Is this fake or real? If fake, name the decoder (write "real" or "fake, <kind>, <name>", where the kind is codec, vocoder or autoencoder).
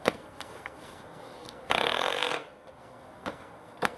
fake, codec, SNAC